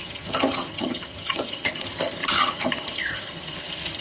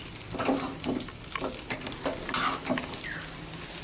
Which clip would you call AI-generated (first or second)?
first